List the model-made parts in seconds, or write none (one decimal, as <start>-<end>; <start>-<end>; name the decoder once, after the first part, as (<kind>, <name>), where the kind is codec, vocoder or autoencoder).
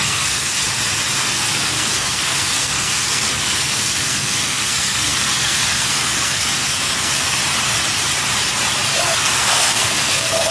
0.0-0.6 (codec, SNAC); 1.2-7.4; 9.0-10.5